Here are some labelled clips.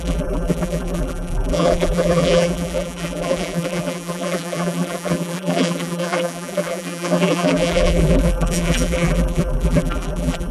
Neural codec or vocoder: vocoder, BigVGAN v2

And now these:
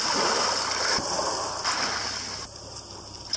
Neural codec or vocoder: none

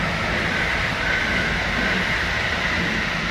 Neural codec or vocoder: none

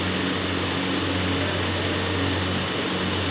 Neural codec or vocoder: none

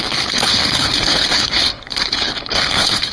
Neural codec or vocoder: codec, HILCodec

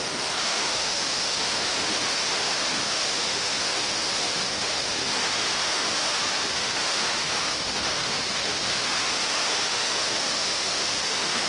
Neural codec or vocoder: autoencoder, DAC-VAE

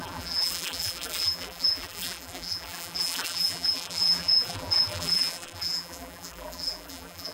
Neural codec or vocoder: vocoder, BigVGAN v2